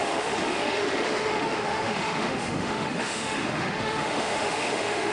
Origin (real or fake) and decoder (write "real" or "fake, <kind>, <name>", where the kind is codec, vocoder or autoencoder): fake, autoencoder, DAC-VAE